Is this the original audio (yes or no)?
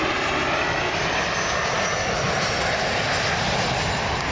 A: yes